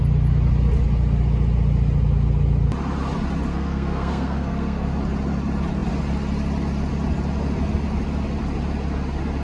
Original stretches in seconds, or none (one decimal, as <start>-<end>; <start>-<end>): 0.0-3.5; 4.9-9.4